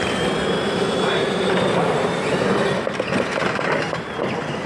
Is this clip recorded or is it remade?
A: recorded